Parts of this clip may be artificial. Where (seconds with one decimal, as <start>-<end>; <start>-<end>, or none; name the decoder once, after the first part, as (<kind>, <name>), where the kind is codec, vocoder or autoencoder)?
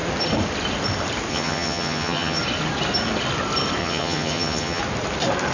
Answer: 1.3-2.4 (vocoder, HiFi-GAN); 3.8-4.8